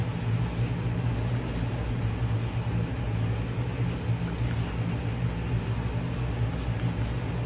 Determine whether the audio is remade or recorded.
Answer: recorded